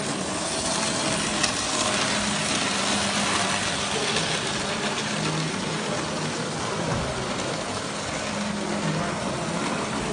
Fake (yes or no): no